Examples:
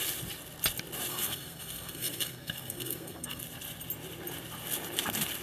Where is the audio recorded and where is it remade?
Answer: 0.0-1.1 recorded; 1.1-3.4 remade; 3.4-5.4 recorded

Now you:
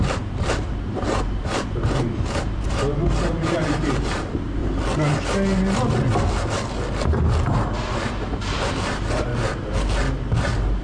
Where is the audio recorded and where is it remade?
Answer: 0.0-4.6 remade; 4.6-8.4 recorded; 8.4-9.3 remade; 9.3-10.8 recorded

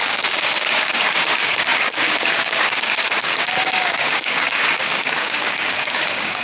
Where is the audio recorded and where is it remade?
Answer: 0.0-6.4 remade

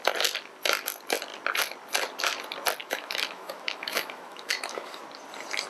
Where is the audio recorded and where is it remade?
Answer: 0.0-2.8 recorded; 2.8-5.0 remade; 5.0-5.7 recorded